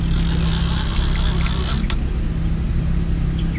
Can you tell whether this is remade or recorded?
recorded